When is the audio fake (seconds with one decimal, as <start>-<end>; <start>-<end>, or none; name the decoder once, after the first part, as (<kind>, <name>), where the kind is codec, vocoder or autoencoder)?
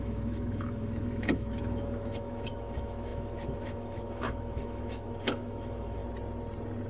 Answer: 0.0-6.0 (autoencoder, DAC-VAE)